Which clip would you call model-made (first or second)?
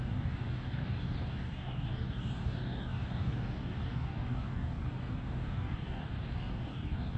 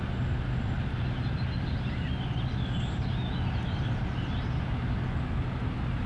first